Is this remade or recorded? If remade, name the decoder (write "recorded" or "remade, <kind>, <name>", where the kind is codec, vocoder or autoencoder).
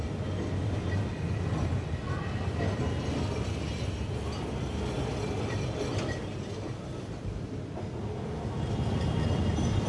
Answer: recorded